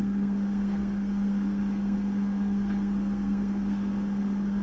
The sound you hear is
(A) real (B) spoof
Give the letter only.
B